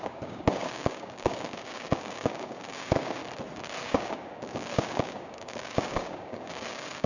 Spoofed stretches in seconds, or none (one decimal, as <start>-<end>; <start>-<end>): 0.0-3.2; 3.8-7.1

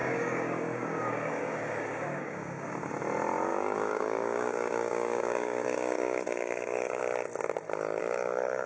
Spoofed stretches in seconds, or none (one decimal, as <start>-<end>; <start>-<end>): 0.0-2.7; 3.5-7.0; 8.0-8.7

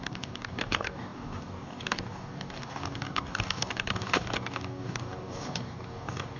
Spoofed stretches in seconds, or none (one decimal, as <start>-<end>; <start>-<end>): 0.0-6.4

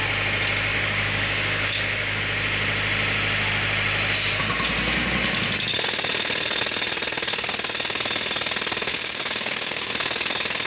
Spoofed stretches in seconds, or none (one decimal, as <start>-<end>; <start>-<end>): 0.7-2.2; 8.9-9.9